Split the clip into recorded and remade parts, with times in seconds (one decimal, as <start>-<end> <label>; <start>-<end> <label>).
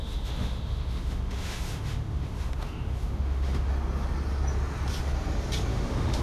0.0-3.7 remade; 3.7-5.7 recorded; 5.7-6.2 remade